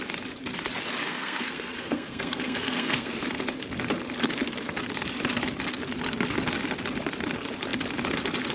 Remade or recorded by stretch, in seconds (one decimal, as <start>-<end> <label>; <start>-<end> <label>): 0.0-1.1 recorded; 1.1-3.1 remade; 3.1-8.5 recorded